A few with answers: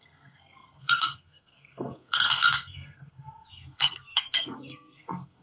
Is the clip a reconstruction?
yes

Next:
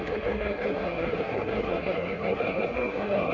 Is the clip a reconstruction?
yes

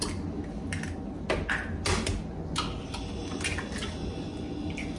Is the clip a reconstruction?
no